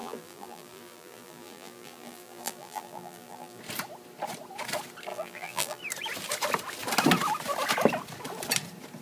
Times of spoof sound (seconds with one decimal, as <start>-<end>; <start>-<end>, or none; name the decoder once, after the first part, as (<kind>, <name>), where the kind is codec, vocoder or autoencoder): 0.0-3.6 (vocoder, BigVGAN v2); 5.1-5.8